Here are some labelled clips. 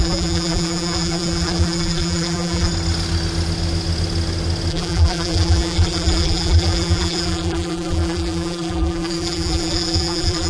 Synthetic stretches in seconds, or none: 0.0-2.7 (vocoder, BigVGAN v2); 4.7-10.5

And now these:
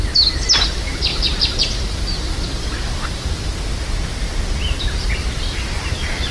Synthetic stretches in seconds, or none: 0.7-1.1 (vocoder, BigVGAN v2); 1.7-3.5; 5.6-6.3

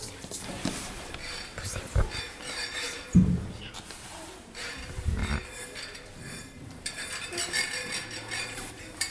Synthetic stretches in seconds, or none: 0.0-1.5 (vocoder, BigVGAN v2); 2.7-5.2; 6.6-9.1

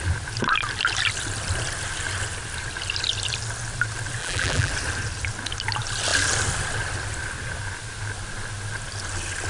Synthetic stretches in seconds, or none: 4.2-4.7 (vocoder, BigVGAN v2)

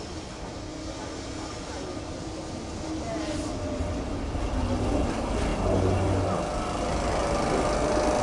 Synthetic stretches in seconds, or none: 0.0-0.7 (vocoder, BigVGAN v2); 3.5-5.5

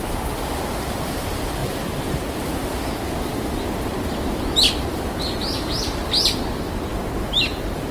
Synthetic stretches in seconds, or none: 0.0-7.9 (vocoder, BigVGAN v2)